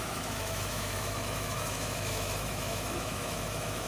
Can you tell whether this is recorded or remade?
remade